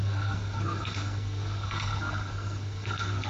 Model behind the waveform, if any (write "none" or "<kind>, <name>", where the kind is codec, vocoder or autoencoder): codec, SNAC